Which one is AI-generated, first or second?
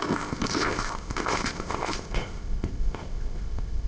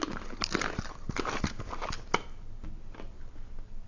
first